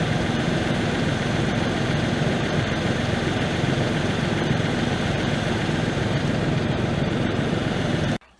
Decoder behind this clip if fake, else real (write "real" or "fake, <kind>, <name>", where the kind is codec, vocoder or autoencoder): fake, vocoder, BigVGAN v2